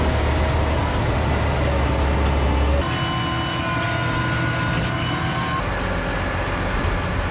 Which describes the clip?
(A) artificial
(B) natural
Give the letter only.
B